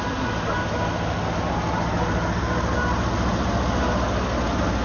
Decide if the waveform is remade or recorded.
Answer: recorded